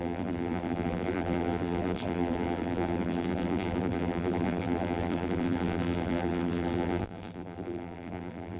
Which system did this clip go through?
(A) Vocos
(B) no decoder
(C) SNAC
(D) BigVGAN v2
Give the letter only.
D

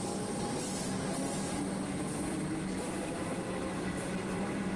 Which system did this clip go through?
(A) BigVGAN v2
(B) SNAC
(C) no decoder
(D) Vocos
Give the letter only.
C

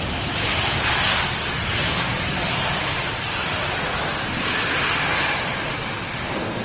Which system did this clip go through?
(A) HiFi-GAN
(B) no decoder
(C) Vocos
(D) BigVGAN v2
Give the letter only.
B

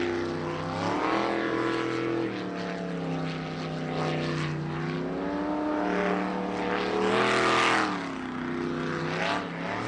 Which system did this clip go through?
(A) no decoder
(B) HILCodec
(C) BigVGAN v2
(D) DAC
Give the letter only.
A